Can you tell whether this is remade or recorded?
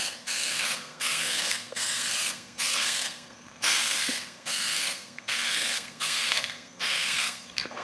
remade